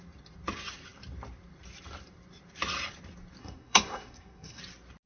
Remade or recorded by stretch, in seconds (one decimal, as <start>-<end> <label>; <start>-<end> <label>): 0.0-3.4 recorded; 3.4-4.6 remade; 4.6-5.1 recorded